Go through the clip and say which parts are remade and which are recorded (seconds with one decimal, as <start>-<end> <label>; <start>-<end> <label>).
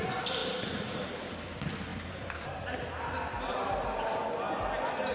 0.0-0.4 recorded; 0.4-1.3 remade; 1.3-1.9 recorded; 1.9-2.8 remade; 2.8-5.1 recorded